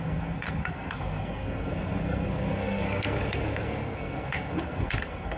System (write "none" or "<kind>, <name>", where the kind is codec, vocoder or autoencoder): codec, SNAC